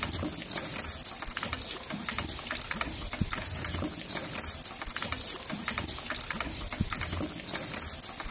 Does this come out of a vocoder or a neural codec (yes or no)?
no